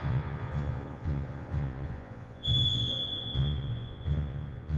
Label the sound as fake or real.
fake